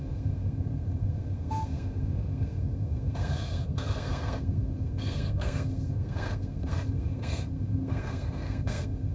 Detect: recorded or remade remade